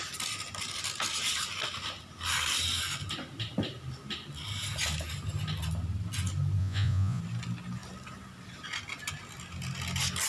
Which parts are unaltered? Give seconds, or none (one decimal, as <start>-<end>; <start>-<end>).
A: 0.0-6.6; 7.2-10.3